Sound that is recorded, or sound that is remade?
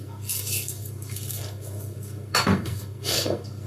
remade